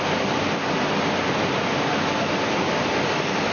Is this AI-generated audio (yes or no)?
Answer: no